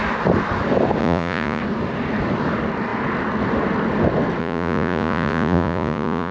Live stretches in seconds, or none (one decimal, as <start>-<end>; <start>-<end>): 0.0-1.0; 1.6-4.4

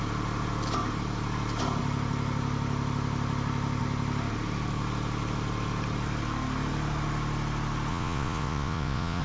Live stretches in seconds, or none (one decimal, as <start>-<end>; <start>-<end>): 0.0-7.9

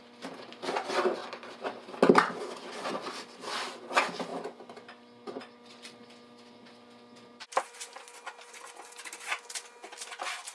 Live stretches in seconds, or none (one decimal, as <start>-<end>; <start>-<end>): 0.0-10.5

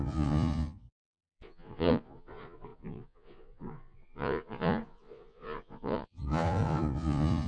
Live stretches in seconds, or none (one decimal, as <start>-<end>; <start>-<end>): none